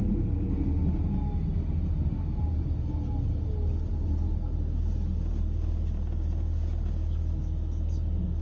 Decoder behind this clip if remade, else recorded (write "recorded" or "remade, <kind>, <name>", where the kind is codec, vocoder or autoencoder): recorded